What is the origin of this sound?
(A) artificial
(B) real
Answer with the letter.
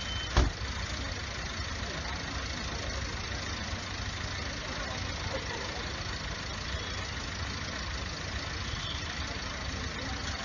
B